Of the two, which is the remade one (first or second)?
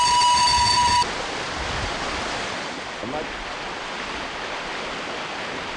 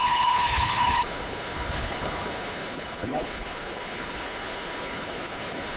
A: second